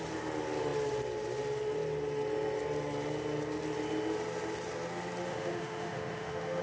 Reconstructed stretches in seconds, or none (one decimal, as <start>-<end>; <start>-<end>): 5.3-6.6